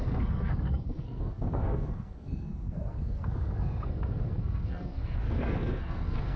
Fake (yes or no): yes